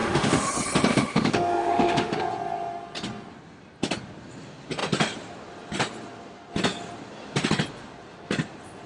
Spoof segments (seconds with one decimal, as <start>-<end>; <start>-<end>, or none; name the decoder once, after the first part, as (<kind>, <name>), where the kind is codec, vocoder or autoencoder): 0.0-0.5 (autoencoder, DAC-VAE); 0.9-2.2